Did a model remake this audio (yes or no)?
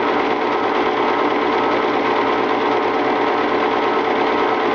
no